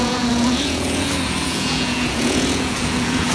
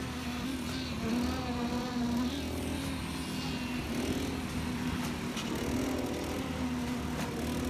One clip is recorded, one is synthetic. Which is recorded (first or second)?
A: second